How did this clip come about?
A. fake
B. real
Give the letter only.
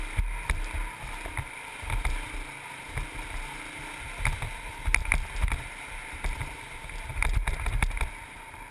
B